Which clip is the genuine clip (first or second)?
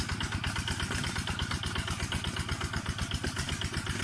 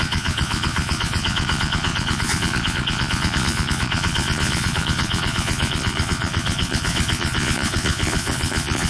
first